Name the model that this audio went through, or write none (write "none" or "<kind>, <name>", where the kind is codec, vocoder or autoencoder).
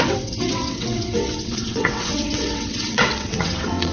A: vocoder, WaveNeXt